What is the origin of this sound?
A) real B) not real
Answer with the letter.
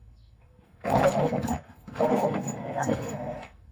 B